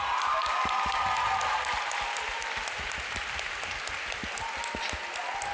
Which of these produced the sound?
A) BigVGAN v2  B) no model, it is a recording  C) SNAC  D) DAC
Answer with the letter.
B